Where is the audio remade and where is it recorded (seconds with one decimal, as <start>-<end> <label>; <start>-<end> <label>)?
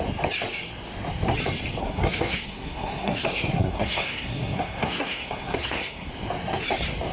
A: 0.0-1.8 recorded; 1.8-6.1 remade; 6.1-7.1 recorded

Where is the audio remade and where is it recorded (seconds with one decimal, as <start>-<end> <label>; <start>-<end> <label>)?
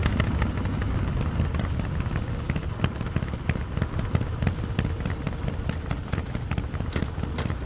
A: 0.0-7.7 recorded